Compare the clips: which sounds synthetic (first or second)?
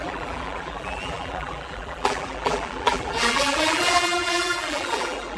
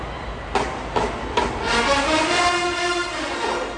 first